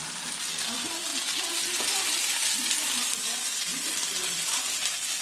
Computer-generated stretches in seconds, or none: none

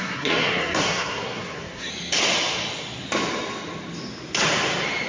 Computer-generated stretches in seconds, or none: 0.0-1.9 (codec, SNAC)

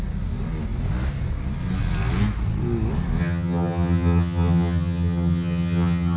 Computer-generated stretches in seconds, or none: 3.2-6.2 (vocoder, HiFi-GAN)

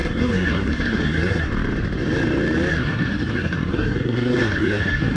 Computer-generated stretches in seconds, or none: 0.0-1.5 (codec, SNAC); 2.7-5.2

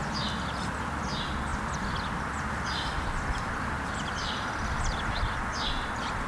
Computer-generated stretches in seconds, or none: 1.5-5.3 (vocoder, BigVGAN v2)

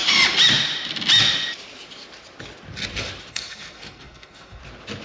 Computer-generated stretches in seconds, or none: 3.3-4.6 (codec, SNAC)

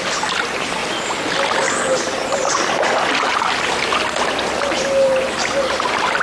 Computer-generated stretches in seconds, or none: none

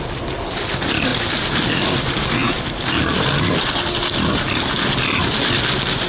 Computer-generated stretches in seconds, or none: 1.1-1.6 (vocoder, BigVGAN v2)